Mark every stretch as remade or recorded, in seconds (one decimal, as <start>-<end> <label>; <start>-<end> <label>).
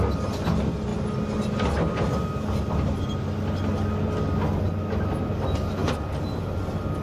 0.0-7.0 recorded